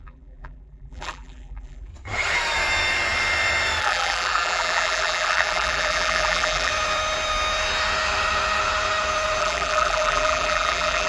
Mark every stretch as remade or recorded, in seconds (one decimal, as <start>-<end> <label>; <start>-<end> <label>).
0.0-1.9 remade; 1.9-3.8 recorded; 3.8-6.7 remade; 6.7-9.4 recorded; 9.4-11.1 remade